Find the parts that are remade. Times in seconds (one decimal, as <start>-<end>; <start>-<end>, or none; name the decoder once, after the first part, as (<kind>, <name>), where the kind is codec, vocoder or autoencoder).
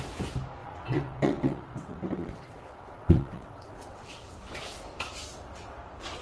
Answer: 0.6-4.3 (vocoder, WaveNeXt); 5.3-5.8